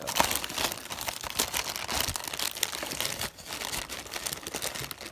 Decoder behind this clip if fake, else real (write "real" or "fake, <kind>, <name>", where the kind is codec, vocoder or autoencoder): real